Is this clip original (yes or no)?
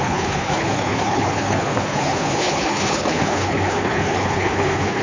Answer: no